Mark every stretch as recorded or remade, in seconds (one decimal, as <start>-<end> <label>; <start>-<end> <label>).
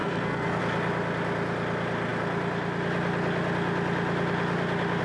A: 0.0-0.6 remade; 0.6-5.0 recorded